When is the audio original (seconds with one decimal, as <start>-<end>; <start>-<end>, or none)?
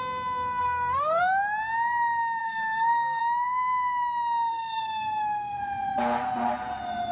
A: 0.0-0.6; 1.2-2.4; 3.2-4.5; 5.6-7.1